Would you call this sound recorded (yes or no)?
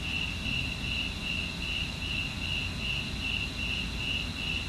yes